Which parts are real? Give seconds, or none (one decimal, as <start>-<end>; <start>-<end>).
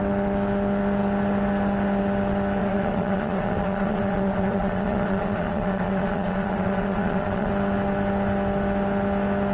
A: 0.0-2.6; 7.5-9.5